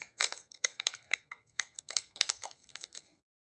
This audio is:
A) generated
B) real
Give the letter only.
A